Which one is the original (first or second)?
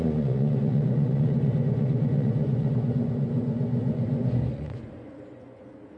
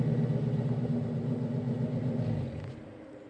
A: second